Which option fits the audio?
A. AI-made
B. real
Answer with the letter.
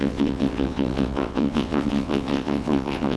A